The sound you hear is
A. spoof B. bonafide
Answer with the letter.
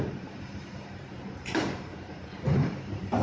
A